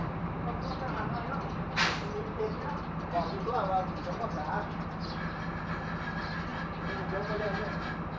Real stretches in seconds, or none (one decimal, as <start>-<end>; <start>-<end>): 4.2-8.2